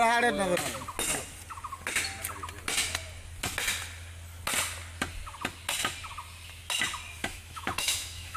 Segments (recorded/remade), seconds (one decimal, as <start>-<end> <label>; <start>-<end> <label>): 0.0-7.2 recorded; 7.2-8.4 remade